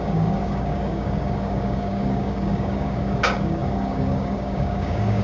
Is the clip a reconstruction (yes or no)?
yes